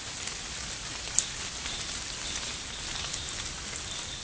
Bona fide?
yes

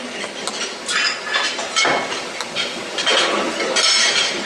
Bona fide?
yes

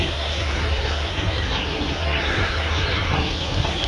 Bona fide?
no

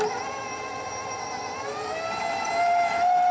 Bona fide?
yes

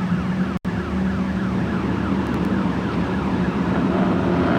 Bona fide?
yes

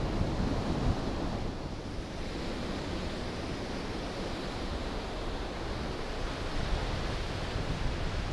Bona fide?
yes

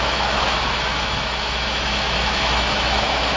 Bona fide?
no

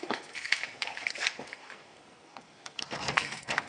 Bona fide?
no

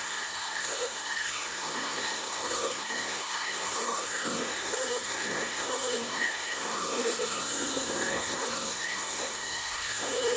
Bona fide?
no